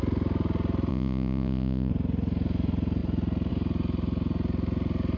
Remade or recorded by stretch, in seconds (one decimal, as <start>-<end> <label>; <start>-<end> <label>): 0.0-0.9 recorded; 0.9-1.9 remade; 1.9-5.2 recorded